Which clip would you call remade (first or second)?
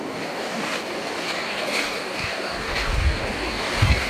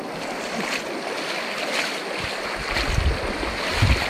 first